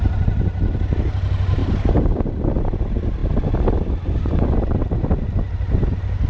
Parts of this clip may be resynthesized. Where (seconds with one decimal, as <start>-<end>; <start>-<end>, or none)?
none